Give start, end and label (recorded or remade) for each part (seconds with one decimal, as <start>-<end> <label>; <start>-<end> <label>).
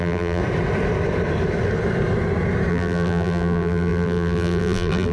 0.0-0.4 remade; 0.4-2.7 recorded; 2.7-5.1 remade